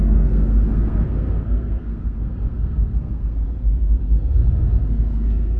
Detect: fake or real fake